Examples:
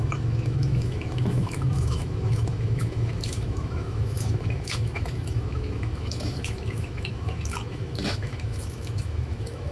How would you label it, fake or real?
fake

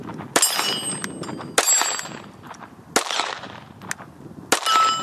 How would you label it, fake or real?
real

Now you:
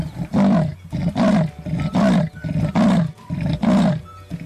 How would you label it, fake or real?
real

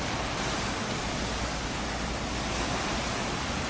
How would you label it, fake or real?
real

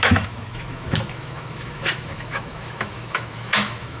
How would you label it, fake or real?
fake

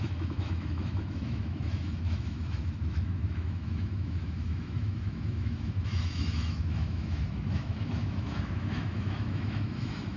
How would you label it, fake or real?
fake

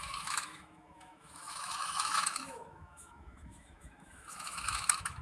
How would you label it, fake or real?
fake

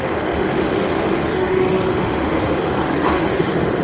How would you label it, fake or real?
fake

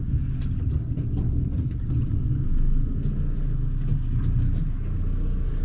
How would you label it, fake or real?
real